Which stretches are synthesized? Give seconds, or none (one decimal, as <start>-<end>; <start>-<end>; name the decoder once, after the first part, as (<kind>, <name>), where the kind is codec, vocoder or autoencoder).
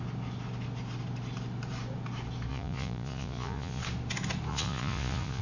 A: 2.5-3.8 (vocoder, Vocos); 4.5-5.4